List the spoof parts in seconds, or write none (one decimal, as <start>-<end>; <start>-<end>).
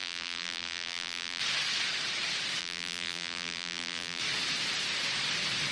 0.0-1.4; 2.6-4.2